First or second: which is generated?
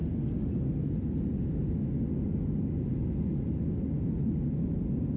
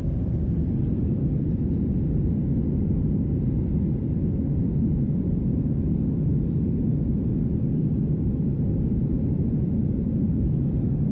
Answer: second